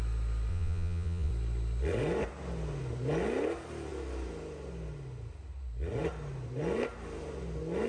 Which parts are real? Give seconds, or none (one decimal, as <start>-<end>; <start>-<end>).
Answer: 0.0-0.5; 1.3-7.9